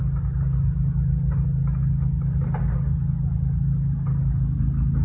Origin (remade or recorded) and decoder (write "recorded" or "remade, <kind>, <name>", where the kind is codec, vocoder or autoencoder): recorded